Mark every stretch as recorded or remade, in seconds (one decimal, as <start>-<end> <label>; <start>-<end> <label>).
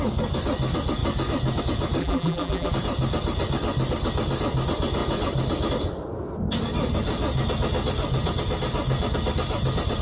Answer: 0.0-2.0 recorded; 2.0-2.7 remade; 2.7-10.0 recorded